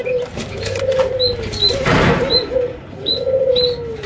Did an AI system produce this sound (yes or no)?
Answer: no